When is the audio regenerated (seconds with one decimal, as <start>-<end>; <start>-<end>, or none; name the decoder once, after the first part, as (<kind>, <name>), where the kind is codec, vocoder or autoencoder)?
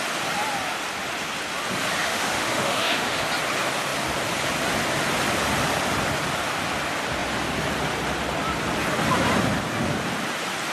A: 2.0-3.3 (autoencoder, DAC-VAE)